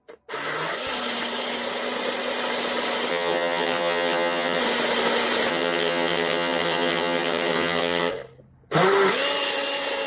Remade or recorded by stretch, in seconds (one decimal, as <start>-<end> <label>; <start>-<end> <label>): 0.0-3.1 recorded; 3.1-4.6 remade; 4.6-5.5 recorded; 5.5-8.1 remade; 8.1-10.1 recorded